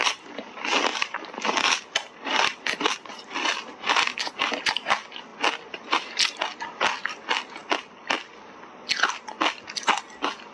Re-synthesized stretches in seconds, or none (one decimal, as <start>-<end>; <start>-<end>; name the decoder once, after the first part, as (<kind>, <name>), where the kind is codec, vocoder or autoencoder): 0.9-1.7 (vocoder, BigVGAN v2); 2.5-4.7